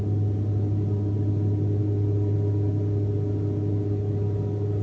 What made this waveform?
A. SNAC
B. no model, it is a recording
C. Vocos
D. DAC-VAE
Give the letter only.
B